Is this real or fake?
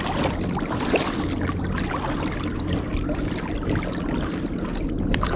real